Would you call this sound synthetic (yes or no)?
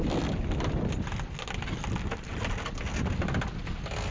no